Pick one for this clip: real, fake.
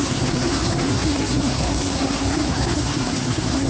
fake